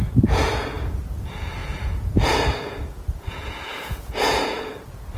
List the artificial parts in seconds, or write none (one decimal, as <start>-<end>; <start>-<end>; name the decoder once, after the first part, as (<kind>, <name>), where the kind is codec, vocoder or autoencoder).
0.0-5.2 (vocoder, Vocos)